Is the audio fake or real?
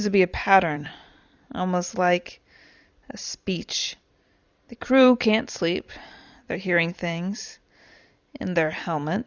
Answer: fake